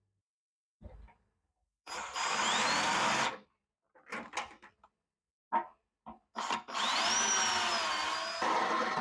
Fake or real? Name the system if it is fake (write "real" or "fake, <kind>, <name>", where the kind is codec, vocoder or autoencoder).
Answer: real